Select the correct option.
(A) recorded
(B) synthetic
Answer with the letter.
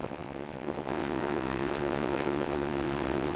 B